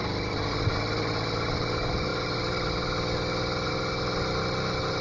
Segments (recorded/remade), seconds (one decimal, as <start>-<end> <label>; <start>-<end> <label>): 0.0-5.0 recorded

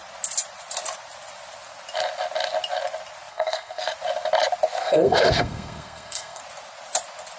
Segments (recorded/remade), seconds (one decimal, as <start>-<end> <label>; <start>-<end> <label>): 0.0-3.3 recorded; 3.3-3.8 remade; 3.8-4.8 recorded; 4.8-6.4 remade; 6.4-7.4 recorded

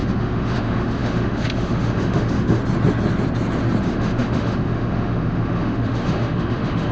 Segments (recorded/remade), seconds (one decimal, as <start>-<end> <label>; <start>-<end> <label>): 0.0-2.6 remade; 2.6-3.8 recorded; 3.8-6.9 remade

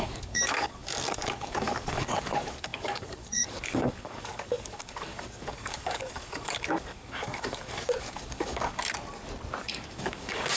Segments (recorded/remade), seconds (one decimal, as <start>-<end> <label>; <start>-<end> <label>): 0.0-8.8 remade; 8.8-9.6 recorded; 9.6-10.6 remade

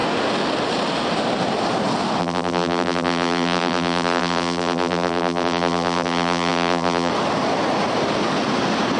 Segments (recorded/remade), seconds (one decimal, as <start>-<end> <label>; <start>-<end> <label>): 0.0-2.2 recorded; 2.2-7.1 remade; 7.1-9.0 recorded